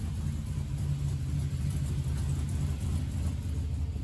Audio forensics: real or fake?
real